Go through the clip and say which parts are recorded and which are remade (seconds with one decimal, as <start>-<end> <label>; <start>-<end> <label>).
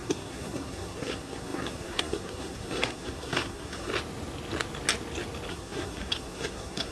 0.0-3.9 remade; 3.9-5.5 recorded; 5.5-6.9 remade